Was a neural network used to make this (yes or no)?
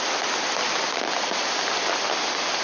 no